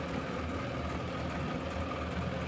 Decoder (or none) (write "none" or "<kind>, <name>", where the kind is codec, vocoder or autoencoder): none